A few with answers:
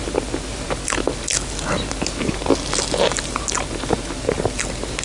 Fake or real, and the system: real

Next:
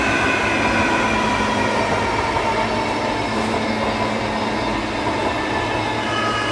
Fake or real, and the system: real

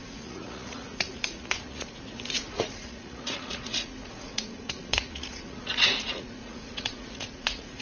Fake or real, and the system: fake, vocoder, Vocos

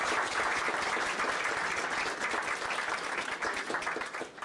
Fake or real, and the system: real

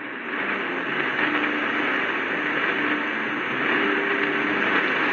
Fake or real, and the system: real